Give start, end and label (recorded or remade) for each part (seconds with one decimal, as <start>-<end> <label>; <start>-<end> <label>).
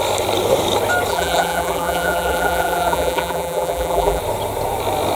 0.0-1.1 recorded; 1.1-4.2 remade; 4.2-5.1 recorded